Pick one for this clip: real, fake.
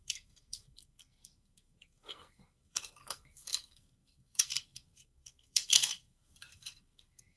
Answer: fake